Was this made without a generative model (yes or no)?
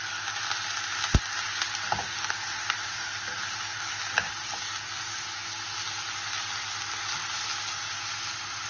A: yes